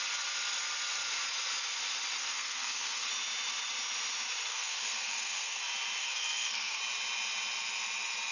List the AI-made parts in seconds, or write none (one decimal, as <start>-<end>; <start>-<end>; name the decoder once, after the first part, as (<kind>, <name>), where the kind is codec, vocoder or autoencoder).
2.2-3.1 (codec, SNAC); 4.5-5.6; 6.0-6.8